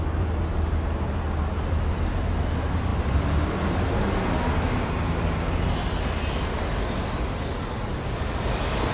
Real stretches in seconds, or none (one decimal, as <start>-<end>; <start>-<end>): 0.0-8.9